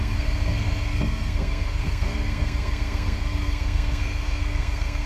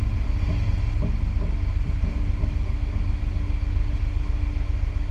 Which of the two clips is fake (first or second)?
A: first